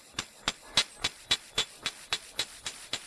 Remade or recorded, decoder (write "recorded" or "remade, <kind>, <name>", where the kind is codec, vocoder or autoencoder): recorded